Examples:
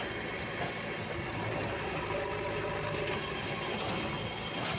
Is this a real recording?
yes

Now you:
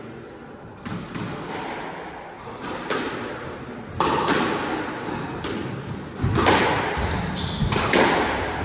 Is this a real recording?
yes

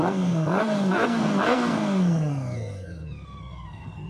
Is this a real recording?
no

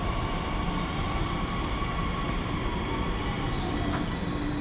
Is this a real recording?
yes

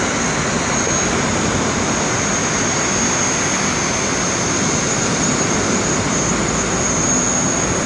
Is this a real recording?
yes